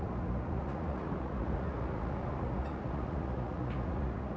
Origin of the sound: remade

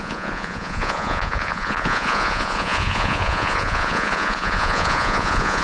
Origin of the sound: remade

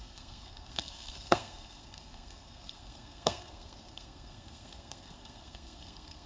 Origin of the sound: remade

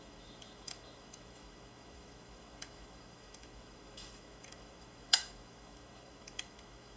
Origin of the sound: remade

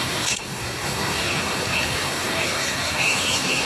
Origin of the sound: remade